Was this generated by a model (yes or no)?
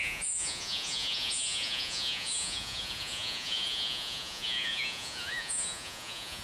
yes